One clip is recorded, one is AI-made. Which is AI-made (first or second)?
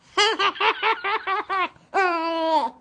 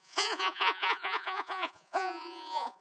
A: second